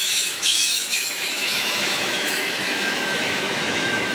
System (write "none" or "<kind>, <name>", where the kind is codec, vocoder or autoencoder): autoencoder, DAC-VAE